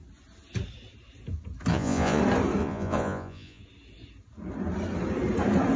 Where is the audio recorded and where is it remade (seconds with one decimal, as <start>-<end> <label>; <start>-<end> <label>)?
0.0-1.7 recorded; 1.7-2.2 remade; 2.2-2.6 recorded; 2.6-3.6 remade; 3.6-5.8 recorded